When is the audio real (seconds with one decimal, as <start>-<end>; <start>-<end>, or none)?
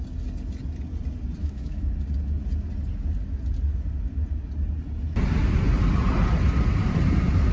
0.0-1.4; 1.9-7.5